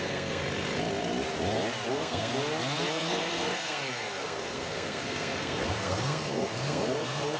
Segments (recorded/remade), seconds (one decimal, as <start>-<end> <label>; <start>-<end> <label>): 0.0-0.4 remade; 0.4-1.9 recorded; 1.9-2.3 remade; 2.3-2.9 recorded; 2.9-7.4 remade